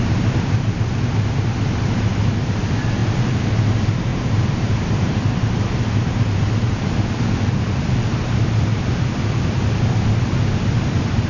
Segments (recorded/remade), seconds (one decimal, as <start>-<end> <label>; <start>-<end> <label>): 0.0-4.1 recorded; 4.1-6.9 remade; 6.9-11.3 recorded